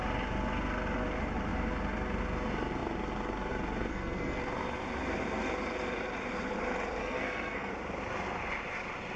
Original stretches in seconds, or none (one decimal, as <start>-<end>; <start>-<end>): 0.0-3.9; 4.4-7.0; 7.7-9.2